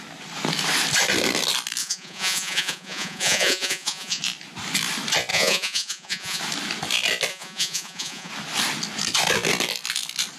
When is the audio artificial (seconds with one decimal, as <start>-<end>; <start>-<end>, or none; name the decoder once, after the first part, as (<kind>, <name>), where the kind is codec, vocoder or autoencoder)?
1.8-4.2 (vocoder, Vocos); 5.3-6.4; 7.3-8.3